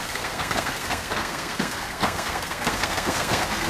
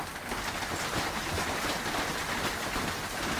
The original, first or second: second